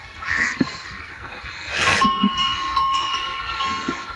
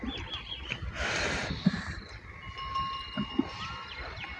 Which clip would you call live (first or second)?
second